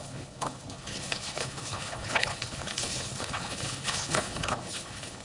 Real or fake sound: fake